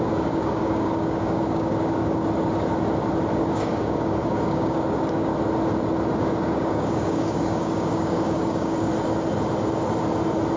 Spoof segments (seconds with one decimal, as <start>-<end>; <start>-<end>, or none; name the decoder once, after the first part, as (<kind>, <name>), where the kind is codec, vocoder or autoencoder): 0.0-2.2 (codec, DAC); 3.4-5.3; 6.2-8.9